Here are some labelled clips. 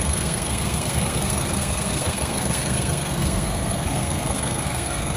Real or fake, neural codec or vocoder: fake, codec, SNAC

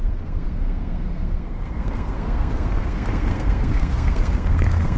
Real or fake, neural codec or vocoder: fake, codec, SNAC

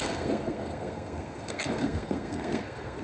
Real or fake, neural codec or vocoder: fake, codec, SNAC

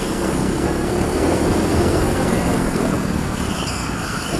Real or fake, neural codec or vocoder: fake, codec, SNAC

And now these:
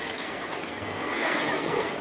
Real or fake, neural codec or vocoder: fake, codec, SNAC